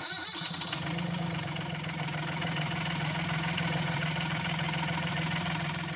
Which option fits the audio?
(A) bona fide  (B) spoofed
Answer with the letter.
B